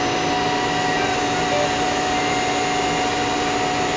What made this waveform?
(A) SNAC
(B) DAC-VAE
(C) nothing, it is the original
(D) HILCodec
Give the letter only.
C